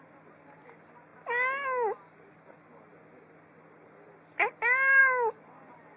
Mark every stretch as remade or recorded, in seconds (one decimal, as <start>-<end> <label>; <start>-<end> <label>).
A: 0.0-6.0 recorded